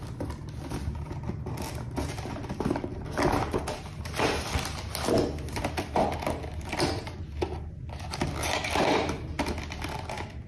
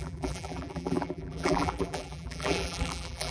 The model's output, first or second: second